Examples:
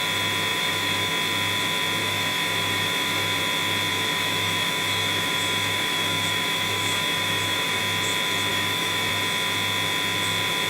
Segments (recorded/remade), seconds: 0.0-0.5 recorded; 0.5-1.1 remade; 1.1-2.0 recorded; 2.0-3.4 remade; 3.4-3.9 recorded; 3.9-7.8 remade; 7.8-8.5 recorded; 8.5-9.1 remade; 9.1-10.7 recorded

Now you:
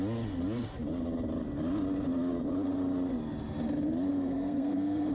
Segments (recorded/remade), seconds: 0.0-4.1 recorded; 4.1-5.1 remade

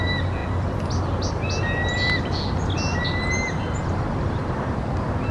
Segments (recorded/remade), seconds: 0.0-5.3 recorded